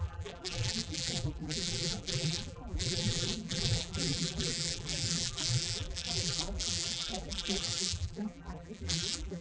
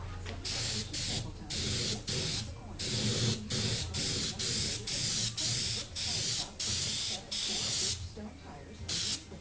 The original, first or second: second